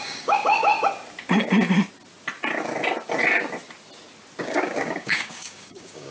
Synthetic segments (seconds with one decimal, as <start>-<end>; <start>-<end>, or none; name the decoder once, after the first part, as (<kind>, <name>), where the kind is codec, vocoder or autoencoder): 0.0-0.7 (codec, DAC); 4.4-6.1